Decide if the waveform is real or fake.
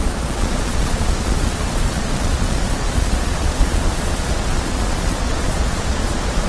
fake